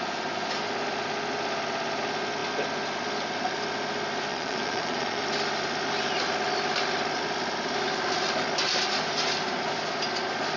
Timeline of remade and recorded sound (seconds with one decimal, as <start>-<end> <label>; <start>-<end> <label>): 0.0-4.3 recorded; 4.3-5.2 remade; 5.2-10.6 recorded